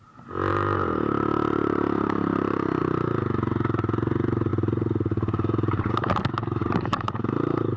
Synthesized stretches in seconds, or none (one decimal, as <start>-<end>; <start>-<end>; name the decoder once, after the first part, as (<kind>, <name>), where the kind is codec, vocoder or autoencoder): 0.5-2.8 (vocoder, BigVGAN v2); 6.6-7.8